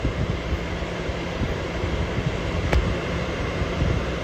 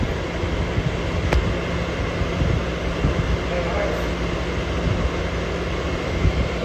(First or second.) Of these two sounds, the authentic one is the second